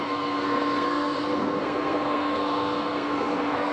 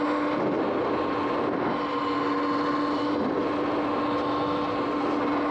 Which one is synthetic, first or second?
first